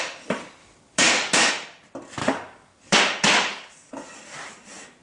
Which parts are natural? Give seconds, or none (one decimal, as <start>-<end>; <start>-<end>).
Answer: 0.0-0.6; 1.5-2.2; 3.0-3.5; 4.0-5.0